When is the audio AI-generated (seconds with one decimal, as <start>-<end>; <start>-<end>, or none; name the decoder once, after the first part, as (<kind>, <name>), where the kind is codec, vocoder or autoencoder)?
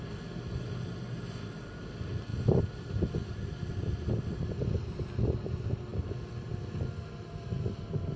none